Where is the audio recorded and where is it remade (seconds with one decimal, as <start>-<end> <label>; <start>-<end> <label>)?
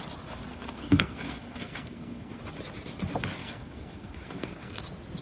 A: 0.0-0.5 recorded; 0.5-2.4 remade; 2.4-3.4 recorded; 3.4-4.8 remade; 4.8-5.2 recorded